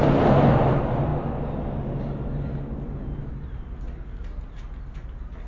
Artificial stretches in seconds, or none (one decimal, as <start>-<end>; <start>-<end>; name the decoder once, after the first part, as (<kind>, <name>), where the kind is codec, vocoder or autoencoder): none